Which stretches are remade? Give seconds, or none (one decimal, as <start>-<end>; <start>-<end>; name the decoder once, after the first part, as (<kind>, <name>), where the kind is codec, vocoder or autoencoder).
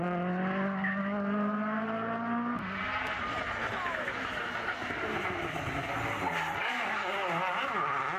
6.6-7.4 (codec, DAC)